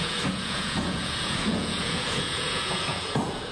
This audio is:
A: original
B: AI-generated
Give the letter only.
B